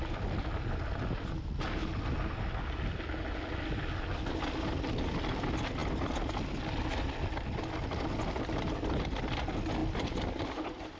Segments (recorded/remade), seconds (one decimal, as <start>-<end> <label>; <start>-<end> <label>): 0.0-11.0 recorded